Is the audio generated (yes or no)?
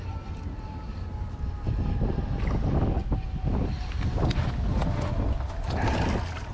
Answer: no